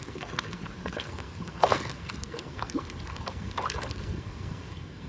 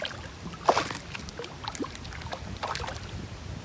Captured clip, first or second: second